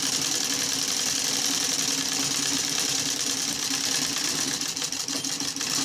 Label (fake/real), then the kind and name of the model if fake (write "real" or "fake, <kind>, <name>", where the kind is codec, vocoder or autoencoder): real